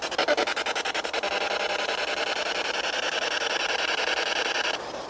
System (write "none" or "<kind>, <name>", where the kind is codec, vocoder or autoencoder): none